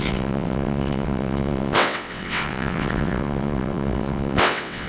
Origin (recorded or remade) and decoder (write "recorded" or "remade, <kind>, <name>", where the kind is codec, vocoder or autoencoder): remade, vocoder, WaveNeXt